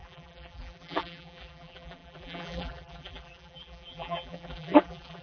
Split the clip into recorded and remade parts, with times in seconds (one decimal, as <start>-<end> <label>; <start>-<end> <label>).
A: 0.0-5.2 remade

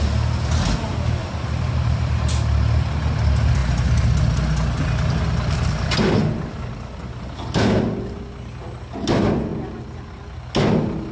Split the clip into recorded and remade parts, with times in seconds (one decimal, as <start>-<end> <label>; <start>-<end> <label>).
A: 0.0-1.2 recorded; 1.2-2.3 remade; 2.3-11.1 recorded

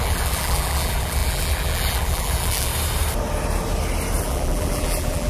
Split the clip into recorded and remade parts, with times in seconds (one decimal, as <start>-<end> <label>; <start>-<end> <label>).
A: 0.0-2.7 remade; 2.7-4.2 recorded; 4.2-5.3 remade

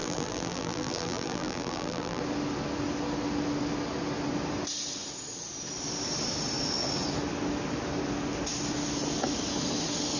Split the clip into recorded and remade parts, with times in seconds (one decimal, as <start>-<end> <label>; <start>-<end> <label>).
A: 0.0-2.2 remade; 2.2-10.2 recorded

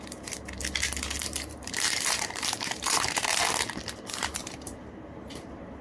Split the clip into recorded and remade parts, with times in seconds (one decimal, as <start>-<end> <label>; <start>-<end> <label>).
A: 0.0-1.2 recorded; 1.2-3.4 remade; 3.4-4.4 recorded; 4.4-5.8 remade

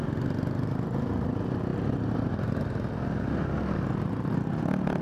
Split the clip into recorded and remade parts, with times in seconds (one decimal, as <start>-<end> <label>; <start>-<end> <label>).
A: 0.0-5.0 recorded